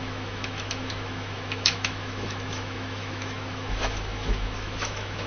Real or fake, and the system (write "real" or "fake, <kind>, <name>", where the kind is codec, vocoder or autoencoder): fake, autoencoder, DAC-VAE